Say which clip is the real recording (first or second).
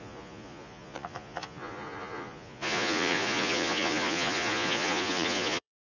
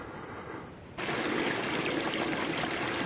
second